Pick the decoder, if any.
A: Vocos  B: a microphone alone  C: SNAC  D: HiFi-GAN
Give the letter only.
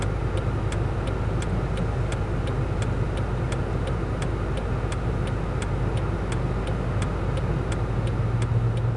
B